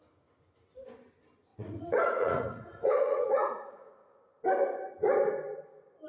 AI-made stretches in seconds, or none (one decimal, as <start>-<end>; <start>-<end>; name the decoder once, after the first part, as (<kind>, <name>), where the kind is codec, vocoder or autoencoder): 1.5-3.9 (vocoder, Vocos)